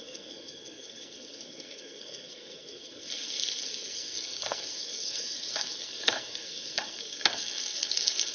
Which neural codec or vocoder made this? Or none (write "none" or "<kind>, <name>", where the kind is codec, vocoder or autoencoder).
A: codec, SNAC